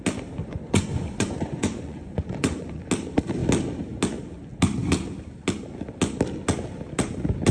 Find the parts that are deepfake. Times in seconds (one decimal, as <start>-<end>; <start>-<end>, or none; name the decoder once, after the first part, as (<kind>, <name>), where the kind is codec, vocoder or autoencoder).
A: 0.4-2.8 (vocoder, Vocos)